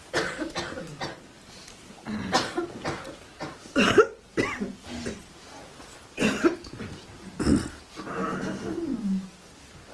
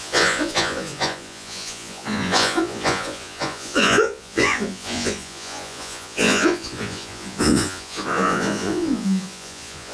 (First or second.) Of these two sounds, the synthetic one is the second